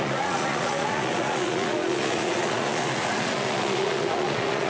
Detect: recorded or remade remade